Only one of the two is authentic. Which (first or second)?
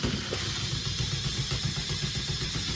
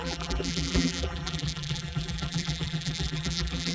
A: first